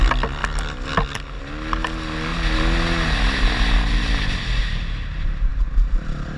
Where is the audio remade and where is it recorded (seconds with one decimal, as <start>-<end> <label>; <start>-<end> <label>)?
0.0-6.4 recorded